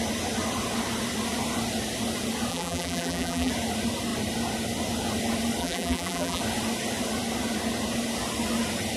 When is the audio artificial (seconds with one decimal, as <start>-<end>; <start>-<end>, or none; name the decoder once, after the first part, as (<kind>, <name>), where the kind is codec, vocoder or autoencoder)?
2.5-3.5 (vocoder, BigVGAN v2); 5.6-6.4